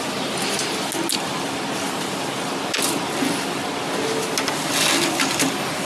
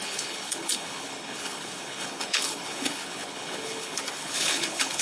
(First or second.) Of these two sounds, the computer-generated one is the second